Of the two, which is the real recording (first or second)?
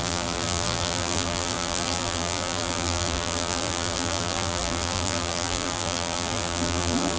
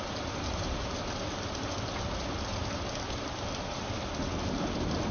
second